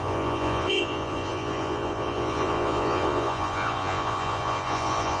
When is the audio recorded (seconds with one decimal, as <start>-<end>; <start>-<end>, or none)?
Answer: none